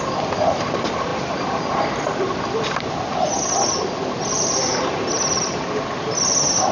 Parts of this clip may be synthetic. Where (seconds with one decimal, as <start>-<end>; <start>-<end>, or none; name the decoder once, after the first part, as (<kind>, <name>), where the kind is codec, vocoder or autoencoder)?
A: none